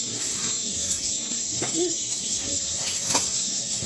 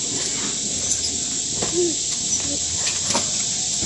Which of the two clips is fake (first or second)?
first